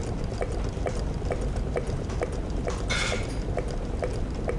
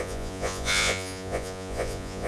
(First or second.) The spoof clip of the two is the second